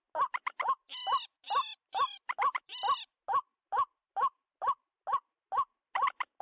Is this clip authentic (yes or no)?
yes